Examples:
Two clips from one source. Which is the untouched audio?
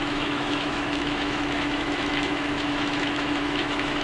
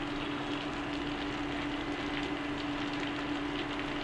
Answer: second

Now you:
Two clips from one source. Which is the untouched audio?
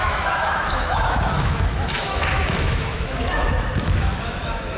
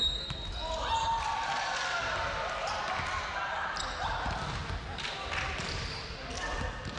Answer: second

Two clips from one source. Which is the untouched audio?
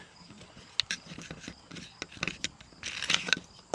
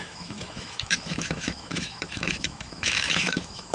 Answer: first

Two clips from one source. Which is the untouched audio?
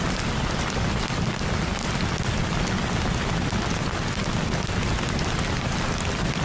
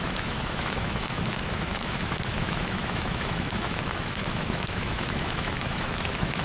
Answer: first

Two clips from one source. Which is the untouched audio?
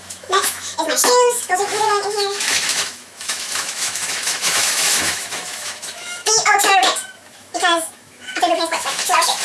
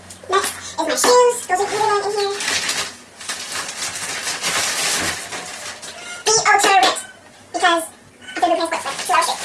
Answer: second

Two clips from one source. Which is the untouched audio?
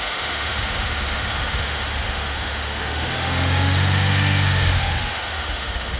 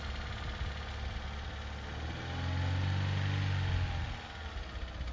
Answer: second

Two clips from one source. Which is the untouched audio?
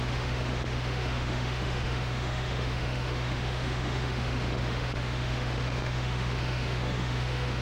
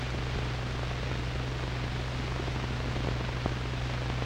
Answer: second